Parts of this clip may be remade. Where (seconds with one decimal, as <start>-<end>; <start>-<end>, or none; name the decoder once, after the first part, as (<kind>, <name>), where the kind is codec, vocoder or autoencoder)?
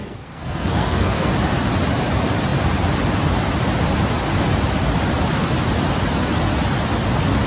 0.0-1.3 (codec, SNAC)